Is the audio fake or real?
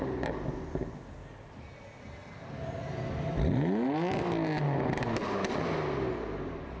real